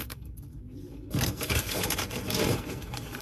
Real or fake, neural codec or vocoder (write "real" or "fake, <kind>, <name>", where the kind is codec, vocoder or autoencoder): fake, codec, SNAC